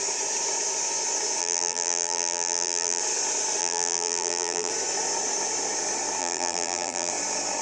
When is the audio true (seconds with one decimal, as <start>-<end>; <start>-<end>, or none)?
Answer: 0.0-1.4; 3.0-3.6; 4.7-6.2; 7.1-7.6